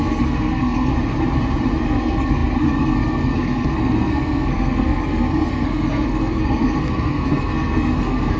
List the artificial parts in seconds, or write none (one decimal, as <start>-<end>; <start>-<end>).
0.0-0.9; 1.8-8.4